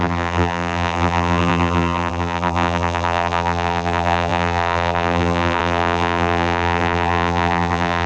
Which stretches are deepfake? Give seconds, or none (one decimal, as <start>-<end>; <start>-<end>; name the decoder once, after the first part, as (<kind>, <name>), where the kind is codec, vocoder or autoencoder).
0.0-8.1 (vocoder, BigVGAN v2)